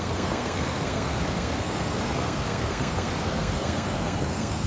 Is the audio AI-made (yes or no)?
yes